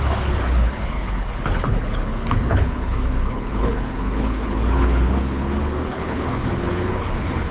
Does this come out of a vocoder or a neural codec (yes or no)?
yes